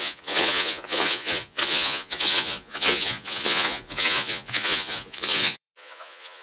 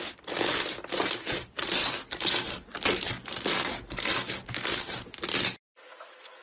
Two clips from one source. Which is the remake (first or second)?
first